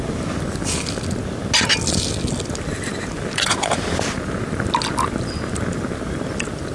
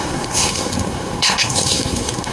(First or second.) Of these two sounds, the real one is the first